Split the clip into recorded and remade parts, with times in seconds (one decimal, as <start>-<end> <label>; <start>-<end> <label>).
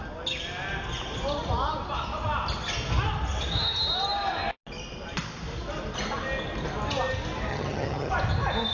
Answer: 0.0-7.5 recorded; 7.5-8.1 remade; 8.1-8.7 recorded